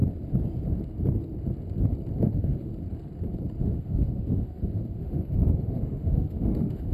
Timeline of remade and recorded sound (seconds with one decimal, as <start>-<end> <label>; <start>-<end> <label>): 0.0-2.2 recorded; 2.2-2.7 remade; 2.7-3.6 recorded; 3.6-6.9 remade